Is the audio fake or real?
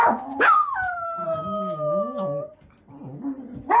real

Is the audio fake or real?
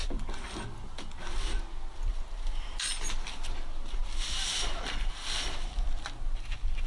real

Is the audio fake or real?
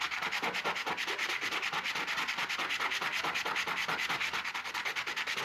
real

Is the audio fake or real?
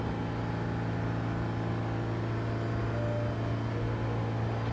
real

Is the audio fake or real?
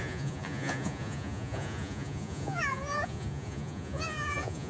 fake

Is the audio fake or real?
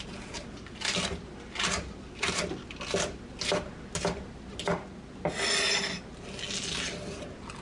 real